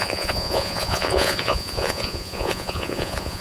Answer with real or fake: fake